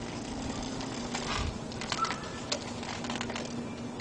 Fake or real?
real